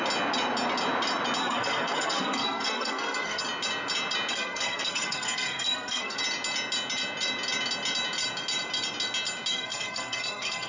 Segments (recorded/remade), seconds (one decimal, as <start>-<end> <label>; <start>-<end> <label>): 0.0-1.4 recorded; 1.4-3.4 remade; 3.4-4.3 recorded; 4.3-6.2 remade; 6.2-9.5 recorded; 9.5-10.7 remade